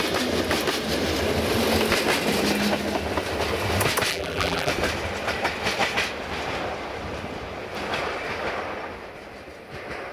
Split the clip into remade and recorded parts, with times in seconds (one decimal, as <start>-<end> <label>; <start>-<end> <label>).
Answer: 0.0-4.1 recorded; 4.1-4.7 remade; 4.7-10.1 recorded